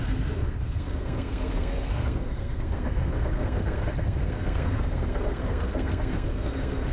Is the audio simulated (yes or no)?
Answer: yes